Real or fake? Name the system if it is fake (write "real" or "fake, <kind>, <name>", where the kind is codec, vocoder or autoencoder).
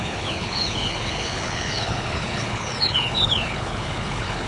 fake, codec, HILCodec